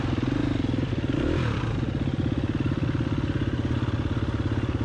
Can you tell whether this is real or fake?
real